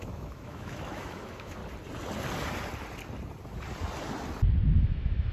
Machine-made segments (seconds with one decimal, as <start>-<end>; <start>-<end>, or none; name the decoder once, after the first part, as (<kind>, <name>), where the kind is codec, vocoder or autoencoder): 0.0-1.6 (autoencoder, DAC-VAE); 4.8-5.3